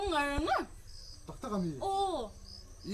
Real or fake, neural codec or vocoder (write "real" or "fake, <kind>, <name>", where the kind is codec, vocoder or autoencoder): real